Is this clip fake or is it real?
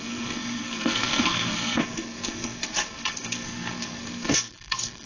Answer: fake